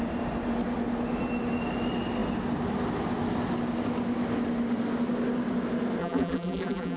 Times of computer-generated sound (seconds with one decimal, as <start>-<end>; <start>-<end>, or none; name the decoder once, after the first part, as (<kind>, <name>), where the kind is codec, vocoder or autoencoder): 6.0-7.0 (vocoder, BigVGAN v2)